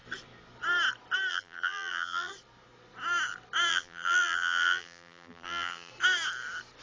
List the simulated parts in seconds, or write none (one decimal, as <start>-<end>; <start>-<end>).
1.3-2.3; 3.7-5.9